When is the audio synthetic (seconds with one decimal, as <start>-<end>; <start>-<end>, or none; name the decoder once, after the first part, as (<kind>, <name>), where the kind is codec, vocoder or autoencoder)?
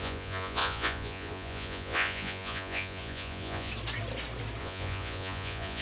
0.0-3.7 (vocoder, Vocos); 4.6-5.8